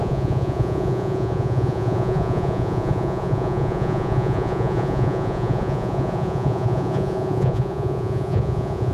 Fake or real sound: fake